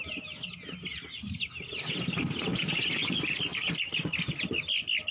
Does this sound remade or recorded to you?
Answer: recorded